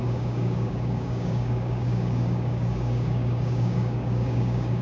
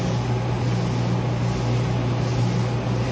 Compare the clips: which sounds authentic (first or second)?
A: second